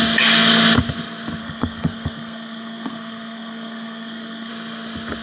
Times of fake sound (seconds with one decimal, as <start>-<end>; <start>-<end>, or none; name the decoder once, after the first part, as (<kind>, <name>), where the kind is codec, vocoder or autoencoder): 1.4-4.5 (codec, SNAC)